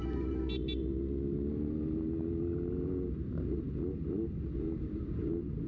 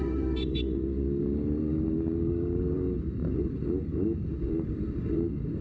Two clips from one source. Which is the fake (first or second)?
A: second